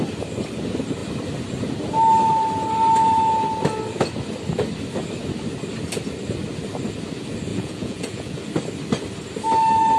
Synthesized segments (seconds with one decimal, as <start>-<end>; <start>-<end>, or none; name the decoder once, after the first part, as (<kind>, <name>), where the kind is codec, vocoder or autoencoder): 7.5-8.4 (vocoder, Vocos)

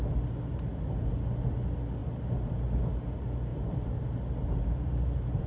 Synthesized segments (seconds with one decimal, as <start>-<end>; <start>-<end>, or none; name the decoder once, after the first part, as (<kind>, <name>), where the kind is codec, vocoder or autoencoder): 0.5-1.1 (vocoder, BigVGAN v2); 3.5-5.5

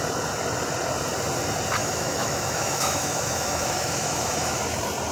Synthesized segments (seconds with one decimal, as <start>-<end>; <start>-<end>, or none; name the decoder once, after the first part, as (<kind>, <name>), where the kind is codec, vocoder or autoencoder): 1.8-4.6 (autoencoder, DAC-VAE)

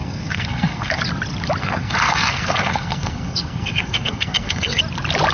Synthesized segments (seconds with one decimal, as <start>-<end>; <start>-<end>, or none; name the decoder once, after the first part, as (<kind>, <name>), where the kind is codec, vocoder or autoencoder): 0.0-1.0 (codec, SNAC); 1.6-4.8

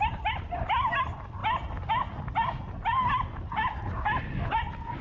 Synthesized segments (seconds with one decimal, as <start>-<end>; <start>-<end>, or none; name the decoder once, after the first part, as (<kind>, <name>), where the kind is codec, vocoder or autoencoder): none

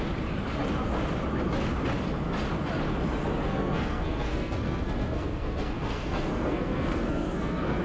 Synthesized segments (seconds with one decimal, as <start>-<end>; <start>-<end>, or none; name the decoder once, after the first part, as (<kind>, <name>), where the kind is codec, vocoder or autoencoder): 3.4-7.8 (codec, SNAC)